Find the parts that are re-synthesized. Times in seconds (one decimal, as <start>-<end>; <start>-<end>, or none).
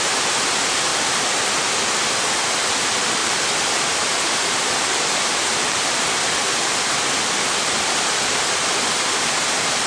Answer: 0.9-1.9; 3.2-6.1